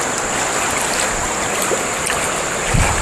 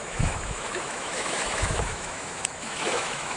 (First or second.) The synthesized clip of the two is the second